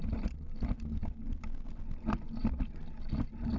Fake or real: real